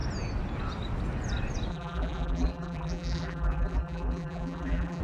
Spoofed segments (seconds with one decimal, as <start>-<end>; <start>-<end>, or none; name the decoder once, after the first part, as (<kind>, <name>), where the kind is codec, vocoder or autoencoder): 1.7-5.0 (vocoder, BigVGAN v2)